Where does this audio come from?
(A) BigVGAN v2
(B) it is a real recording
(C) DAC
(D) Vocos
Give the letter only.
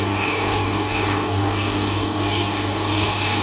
C